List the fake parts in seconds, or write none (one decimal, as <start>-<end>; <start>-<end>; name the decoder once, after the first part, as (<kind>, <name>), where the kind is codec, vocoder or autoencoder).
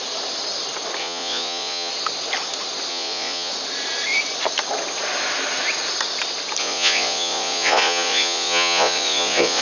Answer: 1.0-1.9 (vocoder, Vocos); 2.9-3.5; 6.6-9.6